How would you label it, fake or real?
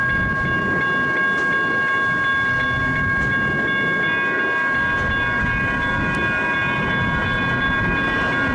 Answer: real